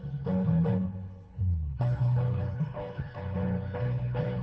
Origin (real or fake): fake